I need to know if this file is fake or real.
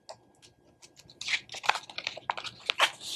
real